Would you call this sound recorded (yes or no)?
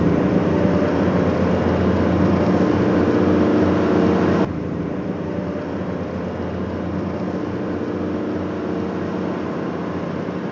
yes